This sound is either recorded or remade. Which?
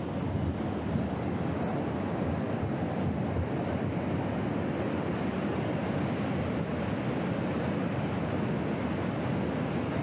recorded